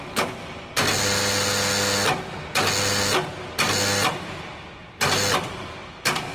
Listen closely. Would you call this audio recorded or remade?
recorded